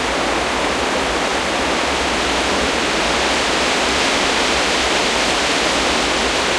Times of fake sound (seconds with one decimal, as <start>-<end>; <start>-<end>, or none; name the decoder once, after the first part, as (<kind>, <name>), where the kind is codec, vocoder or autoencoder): none